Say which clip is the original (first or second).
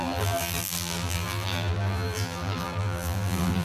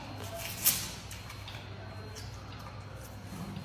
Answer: second